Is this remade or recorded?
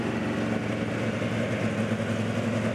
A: recorded